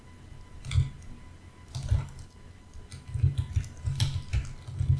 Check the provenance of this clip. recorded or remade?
recorded